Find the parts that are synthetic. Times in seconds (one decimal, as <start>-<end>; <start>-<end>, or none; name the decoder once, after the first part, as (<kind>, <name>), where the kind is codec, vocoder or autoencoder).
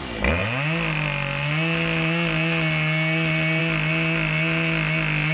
none